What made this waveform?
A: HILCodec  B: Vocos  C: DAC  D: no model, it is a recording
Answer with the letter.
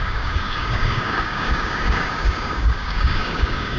C